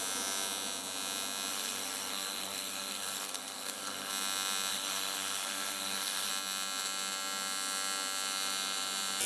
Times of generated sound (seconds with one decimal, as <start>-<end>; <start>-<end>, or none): 1.5-4.1; 4.7-6.3